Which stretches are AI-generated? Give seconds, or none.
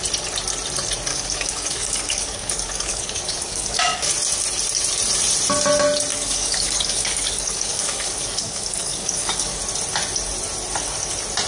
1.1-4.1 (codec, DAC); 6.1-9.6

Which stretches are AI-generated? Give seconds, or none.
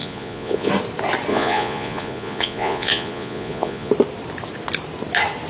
0.0-0.7 (vocoder, Vocos); 1.3-3.9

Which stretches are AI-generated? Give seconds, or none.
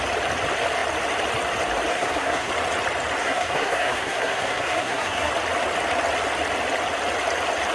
1.9-2.5 (codec, SNAC); 3.2-5.3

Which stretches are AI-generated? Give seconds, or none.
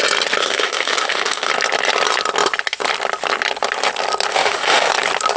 0.4-1.5 (autoencoder, DAC-VAE); 4.3-4.9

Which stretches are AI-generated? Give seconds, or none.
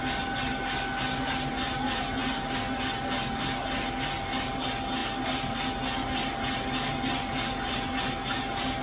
none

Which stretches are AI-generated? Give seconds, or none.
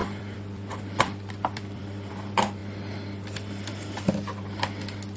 0.0-2.1 (vocoder, BigVGAN v2)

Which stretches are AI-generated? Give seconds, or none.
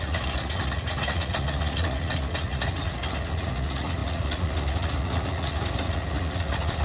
0.0-6.8 (vocoder, Vocos)